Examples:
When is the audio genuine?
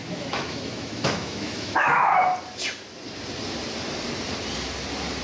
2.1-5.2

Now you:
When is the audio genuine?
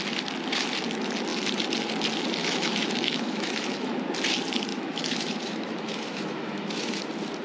0.0-2.4; 4.0-4.7; 7.0-7.4